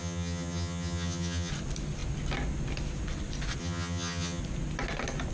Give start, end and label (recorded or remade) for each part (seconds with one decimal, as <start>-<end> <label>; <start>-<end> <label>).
0.0-1.5 remade; 1.5-3.6 recorded; 3.6-4.4 remade; 4.4-5.3 recorded